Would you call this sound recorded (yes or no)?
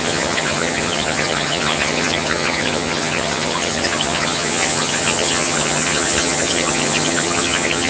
no